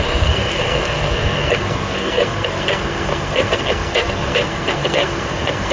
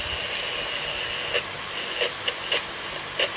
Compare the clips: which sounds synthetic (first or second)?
first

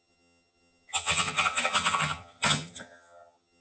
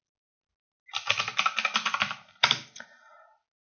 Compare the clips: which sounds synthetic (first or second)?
first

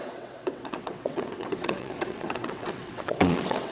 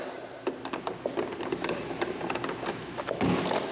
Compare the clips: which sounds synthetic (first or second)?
first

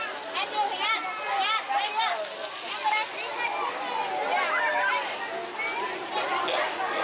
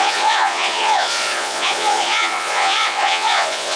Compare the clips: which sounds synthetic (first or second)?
second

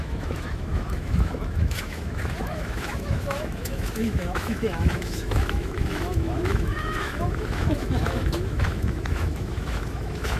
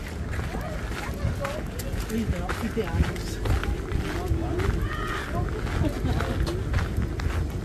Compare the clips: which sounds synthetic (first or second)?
first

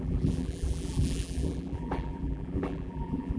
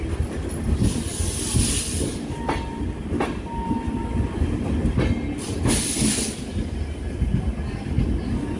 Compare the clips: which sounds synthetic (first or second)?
first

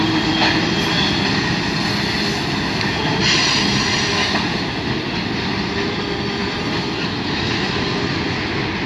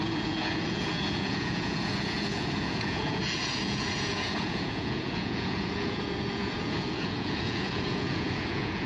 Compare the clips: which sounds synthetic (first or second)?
second